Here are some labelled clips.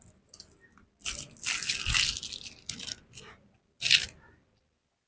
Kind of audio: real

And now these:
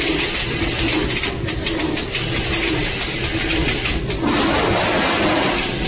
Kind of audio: real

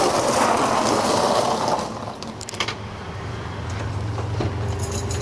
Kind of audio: fake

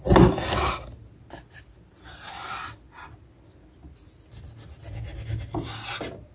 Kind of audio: real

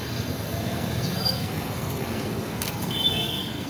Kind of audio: fake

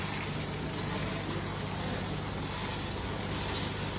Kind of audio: real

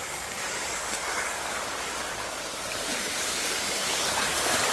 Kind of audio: fake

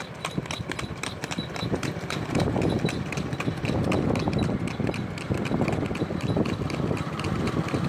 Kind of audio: real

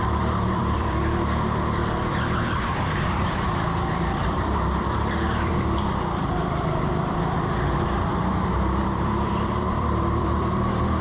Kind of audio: fake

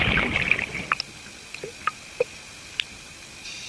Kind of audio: real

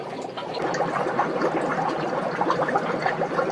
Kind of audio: real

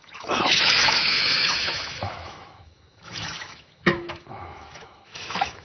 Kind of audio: fake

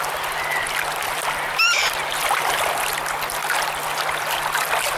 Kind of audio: real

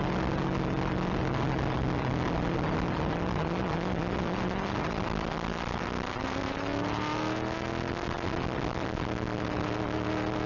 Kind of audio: real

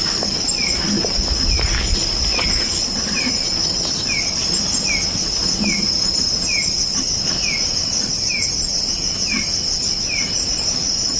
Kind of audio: real